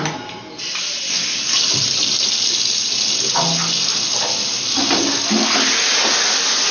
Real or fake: real